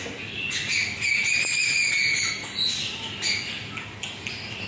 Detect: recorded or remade recorded